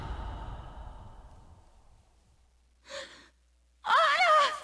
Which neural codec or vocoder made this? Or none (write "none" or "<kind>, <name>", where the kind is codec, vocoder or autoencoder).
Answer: none